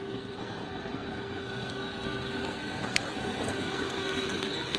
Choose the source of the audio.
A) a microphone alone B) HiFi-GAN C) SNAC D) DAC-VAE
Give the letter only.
C